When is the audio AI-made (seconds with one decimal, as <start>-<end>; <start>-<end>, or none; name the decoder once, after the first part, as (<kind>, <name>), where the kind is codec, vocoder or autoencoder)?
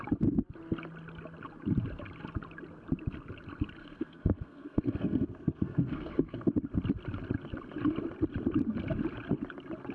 3.8-6.5 (codec, SNAC)